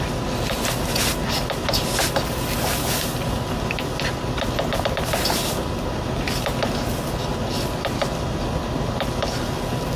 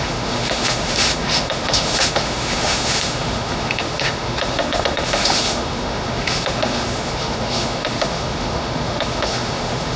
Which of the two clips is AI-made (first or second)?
second